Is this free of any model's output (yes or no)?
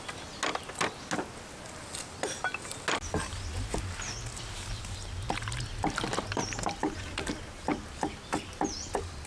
yes